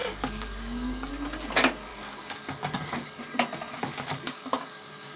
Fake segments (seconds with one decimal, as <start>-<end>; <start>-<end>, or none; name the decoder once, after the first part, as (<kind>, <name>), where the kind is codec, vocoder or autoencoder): 0.0-1.1 (codec, DAC); 1.9-3.2; 3.7-5.2